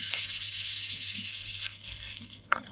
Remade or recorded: remade